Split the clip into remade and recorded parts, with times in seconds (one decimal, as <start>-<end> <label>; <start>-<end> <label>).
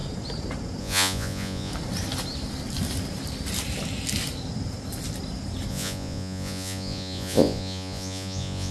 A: 0.0-0.8 recorded; 0.8-1.7 remade; 1.7-5.7 recorded; 5.7-8.7 remade